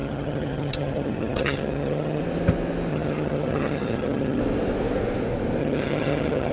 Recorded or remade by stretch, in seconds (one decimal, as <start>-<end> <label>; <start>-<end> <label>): 0.0-2.2 remade; 2.2-2.9 recorded; 2.9-4.4 remade; 4.4-5.6 recorded; 5.6-6.5 remade